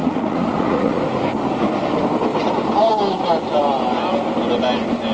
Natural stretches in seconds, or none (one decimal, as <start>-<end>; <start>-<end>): 1.0-5.1